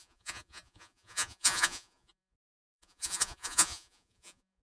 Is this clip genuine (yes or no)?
no